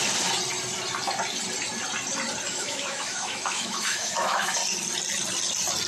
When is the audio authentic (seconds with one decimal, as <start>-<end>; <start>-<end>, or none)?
0.0-2.5; 4.6-5.9